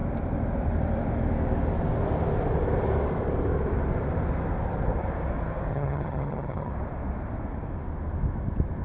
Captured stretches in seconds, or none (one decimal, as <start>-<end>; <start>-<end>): 0.0-5.7; 6.7-8.8